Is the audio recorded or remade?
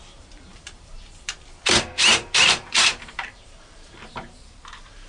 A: remade